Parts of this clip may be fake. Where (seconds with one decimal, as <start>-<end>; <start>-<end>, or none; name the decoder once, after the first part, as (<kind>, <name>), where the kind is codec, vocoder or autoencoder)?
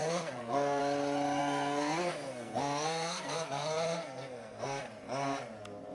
0.0-0.8 (codec, SNAC); 1.4-4.9